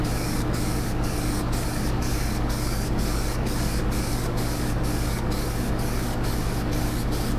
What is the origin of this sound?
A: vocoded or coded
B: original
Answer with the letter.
A